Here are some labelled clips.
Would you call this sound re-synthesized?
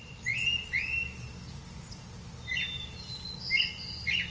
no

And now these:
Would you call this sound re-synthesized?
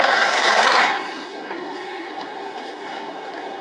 yes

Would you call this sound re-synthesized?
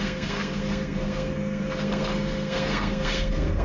yes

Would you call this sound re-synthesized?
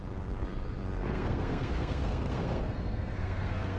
yes